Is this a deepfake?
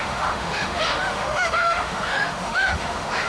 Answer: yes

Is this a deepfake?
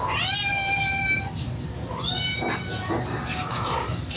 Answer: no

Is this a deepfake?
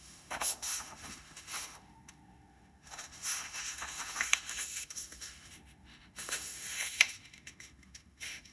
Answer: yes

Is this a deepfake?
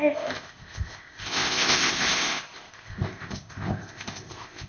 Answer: yes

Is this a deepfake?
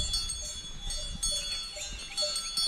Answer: no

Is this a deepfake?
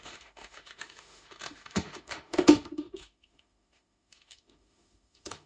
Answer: yes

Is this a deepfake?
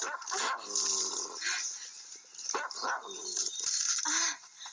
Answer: no